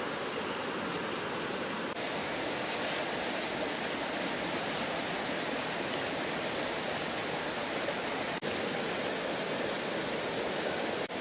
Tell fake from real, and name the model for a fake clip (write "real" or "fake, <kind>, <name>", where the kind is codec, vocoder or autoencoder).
real